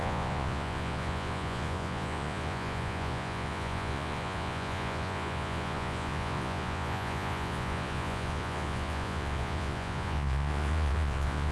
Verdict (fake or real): fake